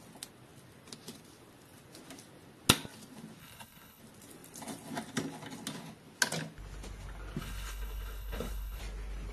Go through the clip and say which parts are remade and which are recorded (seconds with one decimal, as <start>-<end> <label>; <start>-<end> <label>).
0.0-3.4 recorded; 3.4-4.0 remade; 4.0-7.4 recorded; 7.4-8.8 remade; 8.8-9.3 recorded